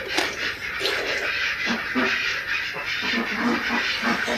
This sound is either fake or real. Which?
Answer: fake